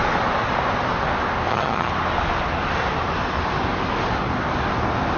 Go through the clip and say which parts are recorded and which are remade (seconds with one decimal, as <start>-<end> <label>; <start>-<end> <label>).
0.0-1.5 recorded; 1.5-1.9 remade; 1.9-5.2 recorded